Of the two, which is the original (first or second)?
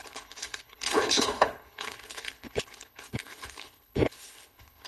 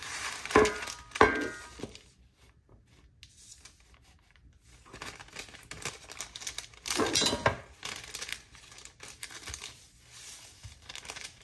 second